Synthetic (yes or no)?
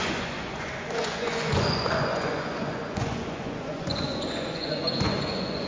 yes